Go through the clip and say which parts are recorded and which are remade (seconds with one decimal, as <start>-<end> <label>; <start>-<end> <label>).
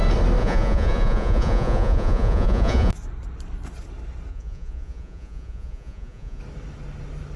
0.0-0.4 recorded; 0.4-2.9 remade; 2.9-4.3 recorded; 4.3-6.4 remade; 6.4-7.4 recorded